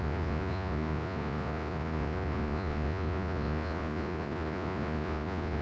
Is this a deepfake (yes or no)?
yes